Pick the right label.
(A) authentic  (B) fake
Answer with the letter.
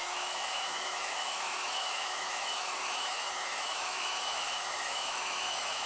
B